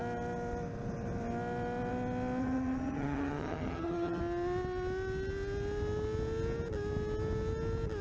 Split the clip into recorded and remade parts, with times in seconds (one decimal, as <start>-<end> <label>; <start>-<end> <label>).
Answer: 0.0-2.4 recorded; 2.4-4.2 remade; 4.2-8.0 recorded